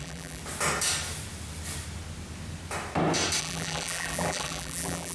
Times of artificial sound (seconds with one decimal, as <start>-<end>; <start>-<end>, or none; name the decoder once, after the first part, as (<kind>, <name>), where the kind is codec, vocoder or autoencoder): 0.0-0.4 (vocoder, BigVGAN v2); 3.4-5.1